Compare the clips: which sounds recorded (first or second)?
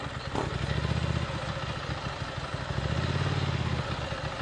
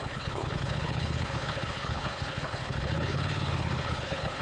first